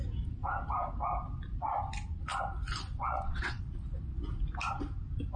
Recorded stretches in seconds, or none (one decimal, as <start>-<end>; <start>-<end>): 0.0-3.0; 3.6-5.4